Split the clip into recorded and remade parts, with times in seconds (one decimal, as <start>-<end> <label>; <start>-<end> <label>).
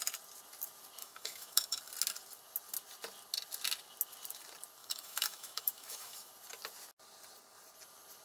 0.0-1.0 recorded; 1.0-1.8 remade; 1.8-4.8 recorded; 4.8-6.3 remade; 6.3-8.2 recorded